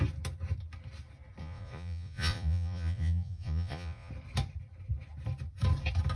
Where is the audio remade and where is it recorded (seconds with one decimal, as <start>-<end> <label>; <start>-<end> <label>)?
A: 0.0-1.4 recorded; 1.4-4.1 remade; 4.1-6.2 recorded